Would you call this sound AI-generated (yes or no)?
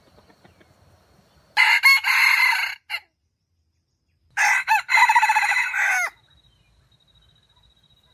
no